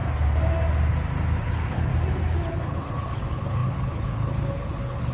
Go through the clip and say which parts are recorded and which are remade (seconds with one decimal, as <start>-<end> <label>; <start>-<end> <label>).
0.0-1.4 recorded; 1.4-1.9 remade; 1.9-2.5 recorded; 2.5-5.1 remade